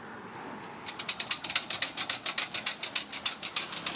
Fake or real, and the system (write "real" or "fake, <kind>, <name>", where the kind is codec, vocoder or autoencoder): real